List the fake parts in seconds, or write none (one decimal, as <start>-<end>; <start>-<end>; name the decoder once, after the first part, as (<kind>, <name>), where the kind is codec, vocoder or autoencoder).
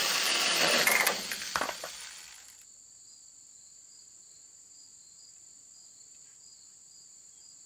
0.0-0.5 (vocoder, BigVGAN v2)